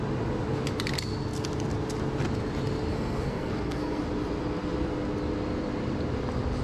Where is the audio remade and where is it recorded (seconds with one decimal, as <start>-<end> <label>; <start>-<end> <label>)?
0.0-2.9 recorded; 2.9-4.0 remade; 4.0-6.6 recorded